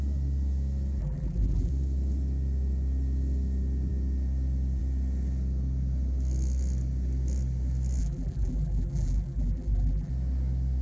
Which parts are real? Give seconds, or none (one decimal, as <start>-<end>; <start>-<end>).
0.0-1.0; 1.7-8.0; 10.1-10.8